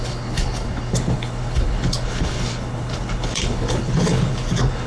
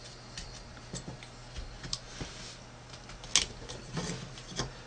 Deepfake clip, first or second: first